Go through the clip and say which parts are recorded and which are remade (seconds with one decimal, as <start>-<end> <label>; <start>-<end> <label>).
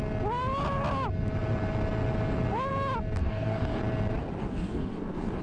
0.0-3.2 recorded; 3.2-3.8 remade; 3.8-4.4 recorded; 4.4-5.4 remade